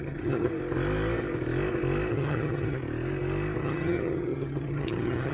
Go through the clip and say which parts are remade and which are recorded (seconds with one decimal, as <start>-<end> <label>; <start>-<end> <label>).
0.0-0.5 remade; 0.5-2.1 recorded; 2.1-2.8 remade; 2.8-3.6 recorded; 3.6-5.3 remade